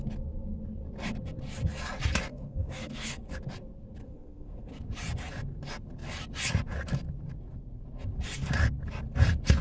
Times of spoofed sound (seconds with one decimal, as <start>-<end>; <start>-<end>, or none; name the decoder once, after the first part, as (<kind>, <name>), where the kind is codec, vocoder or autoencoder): 2.3-3.2 (codec, SNAC); 4.0-4.7